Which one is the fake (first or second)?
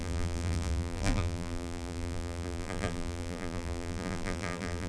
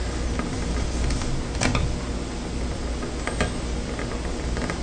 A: first